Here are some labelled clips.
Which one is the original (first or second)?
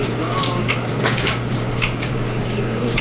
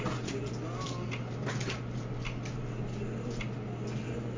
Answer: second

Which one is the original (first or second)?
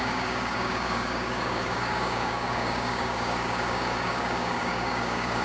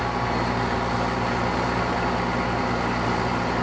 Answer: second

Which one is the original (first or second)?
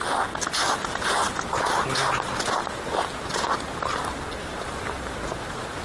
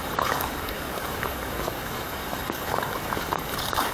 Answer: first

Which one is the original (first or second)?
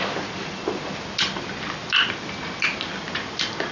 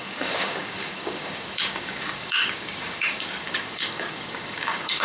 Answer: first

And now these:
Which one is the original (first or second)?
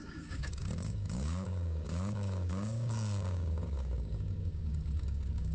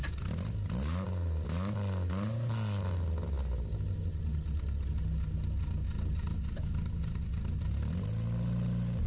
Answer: second